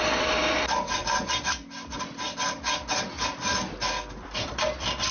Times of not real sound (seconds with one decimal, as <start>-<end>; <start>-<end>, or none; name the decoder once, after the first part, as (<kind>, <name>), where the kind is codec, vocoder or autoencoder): 0.0-1.0 (vocoder, BigVGAN v2); 4.1-5.1

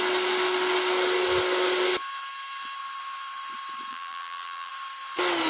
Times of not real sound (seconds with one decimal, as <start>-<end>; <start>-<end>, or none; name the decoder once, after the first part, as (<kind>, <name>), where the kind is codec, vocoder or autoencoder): 3.9-4.7 (vocoder, BigVGAN v2)

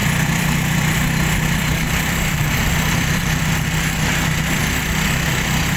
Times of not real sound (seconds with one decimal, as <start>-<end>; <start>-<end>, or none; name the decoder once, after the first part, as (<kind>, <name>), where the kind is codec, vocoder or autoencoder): 0.0-3.5 (vocoder, BigVGAN v2)

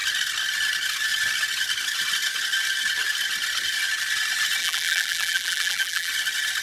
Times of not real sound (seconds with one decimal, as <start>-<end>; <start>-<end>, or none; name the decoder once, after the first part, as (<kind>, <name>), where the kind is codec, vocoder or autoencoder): 4.6-6.1 (vocoder, BigVGAN v2)

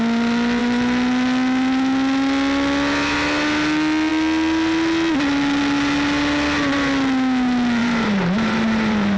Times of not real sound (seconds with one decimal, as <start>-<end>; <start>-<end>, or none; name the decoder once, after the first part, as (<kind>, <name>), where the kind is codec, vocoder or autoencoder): 7.8-9.2 (vocoder, BigVGAN v2)

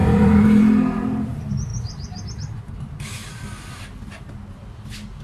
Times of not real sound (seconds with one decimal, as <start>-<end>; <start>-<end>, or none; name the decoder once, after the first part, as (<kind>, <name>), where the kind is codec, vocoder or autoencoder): 0.0-0.8 (vocoder, BigVGAN v2); 1.7-2.8